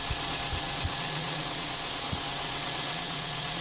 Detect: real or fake fake